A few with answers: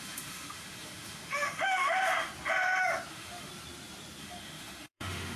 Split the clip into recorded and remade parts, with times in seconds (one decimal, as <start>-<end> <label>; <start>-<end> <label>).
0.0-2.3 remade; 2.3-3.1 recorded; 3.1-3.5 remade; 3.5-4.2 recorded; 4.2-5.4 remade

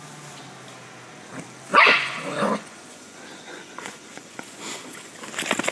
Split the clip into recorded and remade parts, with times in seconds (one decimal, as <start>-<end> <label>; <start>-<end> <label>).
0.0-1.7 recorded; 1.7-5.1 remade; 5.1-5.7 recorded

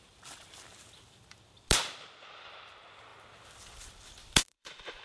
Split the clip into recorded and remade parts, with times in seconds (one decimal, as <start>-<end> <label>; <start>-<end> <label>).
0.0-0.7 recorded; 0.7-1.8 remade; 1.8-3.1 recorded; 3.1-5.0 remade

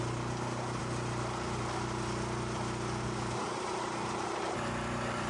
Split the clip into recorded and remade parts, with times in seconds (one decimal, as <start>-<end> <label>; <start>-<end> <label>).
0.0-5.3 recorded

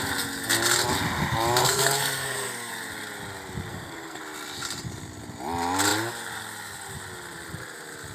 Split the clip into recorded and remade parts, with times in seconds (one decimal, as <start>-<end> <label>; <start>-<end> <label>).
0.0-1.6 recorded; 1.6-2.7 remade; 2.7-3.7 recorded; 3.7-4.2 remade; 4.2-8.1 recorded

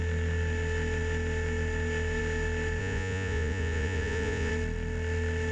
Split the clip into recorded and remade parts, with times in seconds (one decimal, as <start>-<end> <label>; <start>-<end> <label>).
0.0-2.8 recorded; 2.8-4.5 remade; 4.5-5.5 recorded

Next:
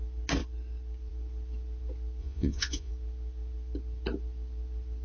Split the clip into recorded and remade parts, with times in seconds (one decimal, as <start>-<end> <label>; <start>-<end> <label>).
0.0-2.2 recorded; 2.2-2.9 remade; 2.9-5.0 recorded

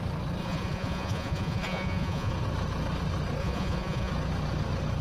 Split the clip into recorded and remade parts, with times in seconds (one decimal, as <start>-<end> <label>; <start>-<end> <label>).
0.0-0.4 recorded; 0.4-2.3 remade; 2.3-3.4 recorded; 3.4-4.1 remade; 4.1-5.0 recorded